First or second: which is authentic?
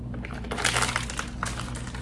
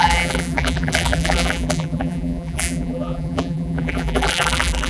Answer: first